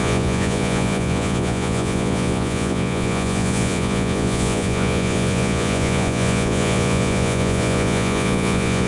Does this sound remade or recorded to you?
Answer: remade